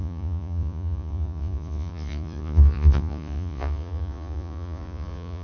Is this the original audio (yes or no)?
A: no